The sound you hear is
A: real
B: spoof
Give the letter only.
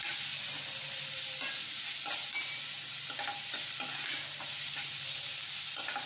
A